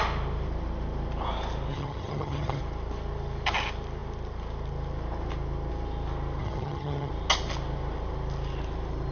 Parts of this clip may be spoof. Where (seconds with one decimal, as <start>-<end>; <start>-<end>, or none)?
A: 1.7-2.6; 6.4-7.1